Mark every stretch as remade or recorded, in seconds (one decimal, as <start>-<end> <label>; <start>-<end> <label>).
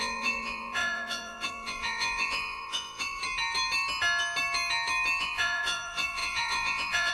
0.0-3.2 remade; 3.2-5.2 recorded; 5.2-7.1 remade